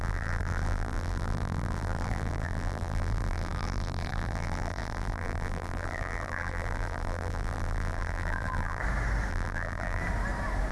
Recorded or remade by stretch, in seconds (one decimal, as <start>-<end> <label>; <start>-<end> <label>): 0.0-8.8 remade; 8.8-9.3 recorded; 9.3-10.0 remade; 10.0-10.7 recorded